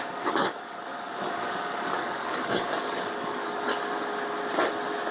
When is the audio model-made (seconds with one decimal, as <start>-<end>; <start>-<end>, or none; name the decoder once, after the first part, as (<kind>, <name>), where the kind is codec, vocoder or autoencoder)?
0.0-3.7 (codec, DAC)